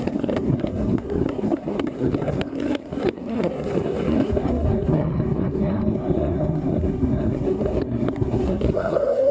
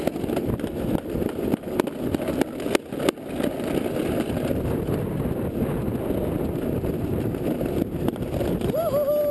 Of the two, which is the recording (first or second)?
second